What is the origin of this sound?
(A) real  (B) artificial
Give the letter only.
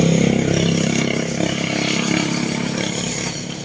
A